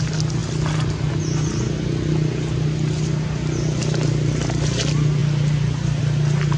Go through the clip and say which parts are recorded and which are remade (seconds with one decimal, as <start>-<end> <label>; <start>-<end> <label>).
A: 0.0-6.6 recorded